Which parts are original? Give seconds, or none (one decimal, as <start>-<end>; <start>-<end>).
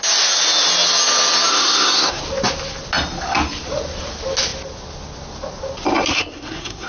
0.0-1.5; 2.2-6.1